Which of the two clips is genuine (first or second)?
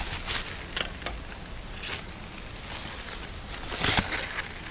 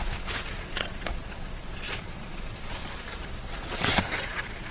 first